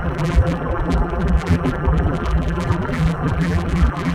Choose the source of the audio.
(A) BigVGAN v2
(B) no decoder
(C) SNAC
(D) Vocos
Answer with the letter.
A